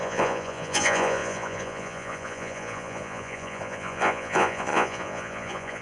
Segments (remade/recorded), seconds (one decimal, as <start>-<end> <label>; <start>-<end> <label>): 0.0-5.8 remade